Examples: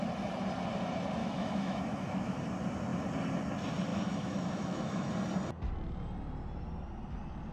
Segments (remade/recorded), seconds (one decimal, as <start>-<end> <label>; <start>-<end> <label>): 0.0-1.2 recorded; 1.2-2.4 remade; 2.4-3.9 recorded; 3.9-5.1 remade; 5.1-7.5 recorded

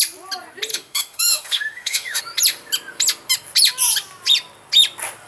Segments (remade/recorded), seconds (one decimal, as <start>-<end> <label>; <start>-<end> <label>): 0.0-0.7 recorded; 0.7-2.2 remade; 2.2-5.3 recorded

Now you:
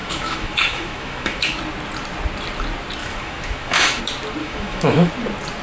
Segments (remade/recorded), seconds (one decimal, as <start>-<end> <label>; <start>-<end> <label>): 0.0-1.6 remade; 1.6-3.0 recorded; 3.0-4.0 remade; 4.0-4.4 recorded; 4.4-5.1 remade; 5.1-5.6 recorded

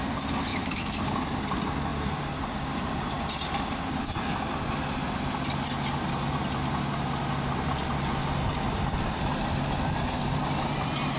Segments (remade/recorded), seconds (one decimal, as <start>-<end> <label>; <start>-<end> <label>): 0.0-0.5 recorded; 0.5-1.0 remade; 1.0-11.2 recorded